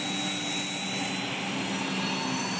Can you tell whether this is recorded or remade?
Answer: recorded